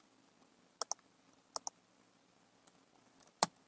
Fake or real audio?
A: real